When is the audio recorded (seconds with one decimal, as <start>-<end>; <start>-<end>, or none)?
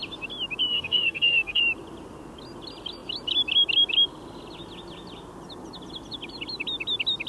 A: 0.0-0.7; 1.6-7.3